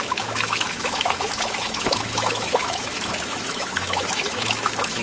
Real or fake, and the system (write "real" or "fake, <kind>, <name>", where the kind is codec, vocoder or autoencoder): fake, autoencoder, DAC-VAE